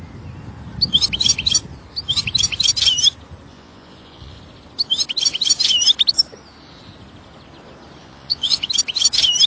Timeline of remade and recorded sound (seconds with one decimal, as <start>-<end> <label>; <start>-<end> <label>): 0.0-3.5 recorded; 3.5-4.4 remade; 4.4-8.0 recorded; 8.0-8.7 remade; 8.7-9.5 recorded